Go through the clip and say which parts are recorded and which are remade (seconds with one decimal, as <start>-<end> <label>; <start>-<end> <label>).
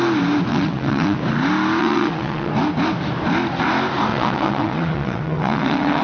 0.0-0.5 recorded; 0.5-1.2 remade; 1.2-1.8 recorded; 1.8-2.5 remade; 2.5-4.1 recorded; 4.1-6.0 remade